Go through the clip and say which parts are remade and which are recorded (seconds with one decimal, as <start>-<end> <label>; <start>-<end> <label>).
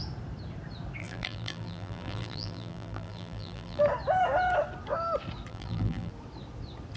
0.0-1.0 recorded; 1.0-3.8 remade; 3.8-5.5 recorded; 5.5-6.1 remade; 6.1-7.0 recorded